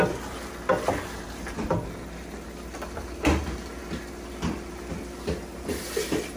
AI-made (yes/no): no